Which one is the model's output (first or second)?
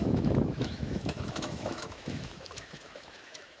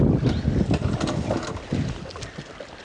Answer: first